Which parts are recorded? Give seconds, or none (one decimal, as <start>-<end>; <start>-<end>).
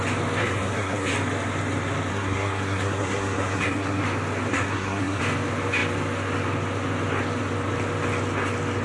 0.0-0.4; 1.1-2.1; 4.0-4.5; 5.2-8.8